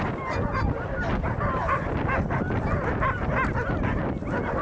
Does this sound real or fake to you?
real